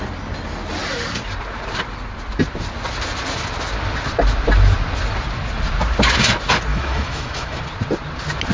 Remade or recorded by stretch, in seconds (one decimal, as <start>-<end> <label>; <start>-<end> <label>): 0.0-6.7 recorded; 6.7-7.6 remade; 7.6-8.5 recorded